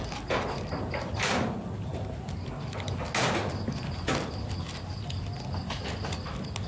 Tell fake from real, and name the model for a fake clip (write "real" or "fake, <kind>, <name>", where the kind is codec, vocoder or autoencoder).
real